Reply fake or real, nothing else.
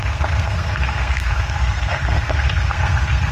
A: fake